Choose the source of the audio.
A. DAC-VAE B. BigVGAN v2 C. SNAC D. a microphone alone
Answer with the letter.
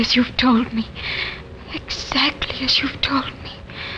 D